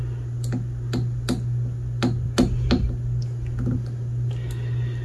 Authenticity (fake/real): real